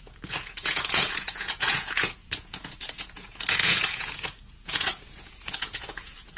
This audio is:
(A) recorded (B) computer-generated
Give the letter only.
B